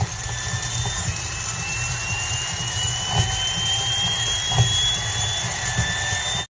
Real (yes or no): yes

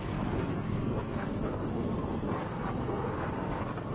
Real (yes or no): no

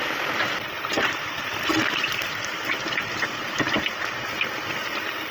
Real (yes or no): yes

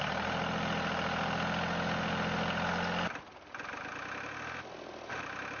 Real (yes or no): yes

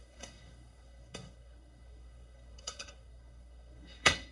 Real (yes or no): no